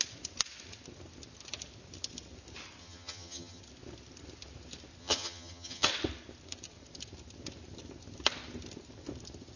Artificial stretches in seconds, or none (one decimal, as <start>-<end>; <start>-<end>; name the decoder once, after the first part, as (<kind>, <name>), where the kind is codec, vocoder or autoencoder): 2.8-3.6 (vocoder, HiFi-GAN); 5.0-5.9